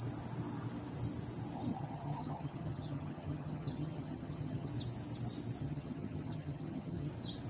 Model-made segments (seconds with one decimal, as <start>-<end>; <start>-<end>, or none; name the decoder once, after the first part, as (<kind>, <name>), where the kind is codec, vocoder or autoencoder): 1.7-4.7 (vocoder, HiFi-GAN); 5.6-7.1